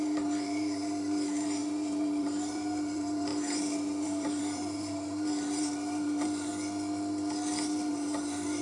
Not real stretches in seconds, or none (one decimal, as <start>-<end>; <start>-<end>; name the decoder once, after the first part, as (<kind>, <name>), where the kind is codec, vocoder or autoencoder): 0.0-6.5 (vocoder, BigVGAN v2); 7.9-8.6